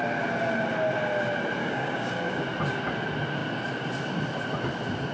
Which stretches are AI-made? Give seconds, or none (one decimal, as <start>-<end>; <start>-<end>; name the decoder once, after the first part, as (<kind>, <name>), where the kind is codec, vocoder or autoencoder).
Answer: 1.6-2.4 (codec, DAC)